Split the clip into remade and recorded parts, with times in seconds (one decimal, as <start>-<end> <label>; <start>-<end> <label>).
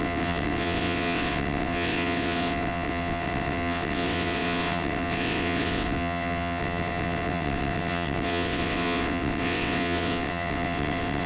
0.0-11.3 remade